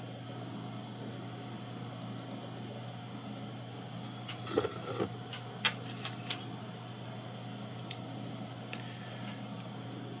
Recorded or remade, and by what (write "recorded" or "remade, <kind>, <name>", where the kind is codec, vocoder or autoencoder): recorded